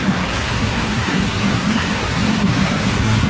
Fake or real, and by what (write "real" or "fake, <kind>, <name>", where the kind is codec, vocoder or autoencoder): fake, codec, SNAC